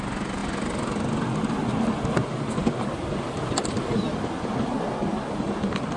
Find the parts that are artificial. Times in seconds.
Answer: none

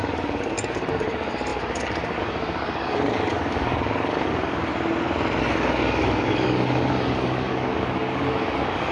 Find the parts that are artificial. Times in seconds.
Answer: 0.0-4.7 (codec, DAC); 5.4-8.9

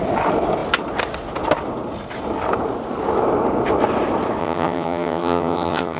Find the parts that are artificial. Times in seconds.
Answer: 4.4-6.0 (vocoder, HiFi-GAN)